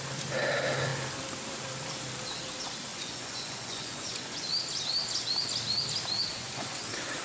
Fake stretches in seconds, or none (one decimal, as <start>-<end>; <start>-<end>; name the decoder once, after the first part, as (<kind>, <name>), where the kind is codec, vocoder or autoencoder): 2.9-4.5 (vocoder, Vocos); 6.3-6.8